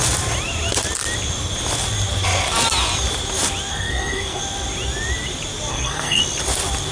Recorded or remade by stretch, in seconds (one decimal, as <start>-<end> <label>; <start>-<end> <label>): 0.0-3.7 recorded; 3.7-4.4 remade; 4.4-5.7 recorded; 5.7-6.2 remade; 6.2-6.9 recorded